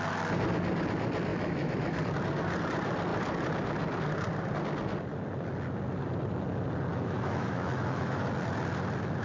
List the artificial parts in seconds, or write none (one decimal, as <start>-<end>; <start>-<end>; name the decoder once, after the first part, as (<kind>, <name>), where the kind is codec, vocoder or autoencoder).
1.3-2.0 (autoencoder, DAC-VAE); 6.9-8.3